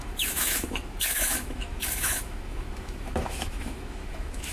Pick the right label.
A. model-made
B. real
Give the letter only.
A